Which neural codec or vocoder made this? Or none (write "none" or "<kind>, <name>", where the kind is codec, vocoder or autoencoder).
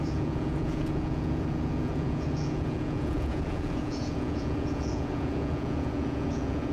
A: vocoder, Vocos